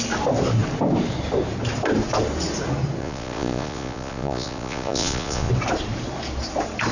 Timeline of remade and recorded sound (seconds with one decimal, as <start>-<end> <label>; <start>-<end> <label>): 0.0-3.0 recorded; 3.0-5.5 remade; 5.5-6.9 recorded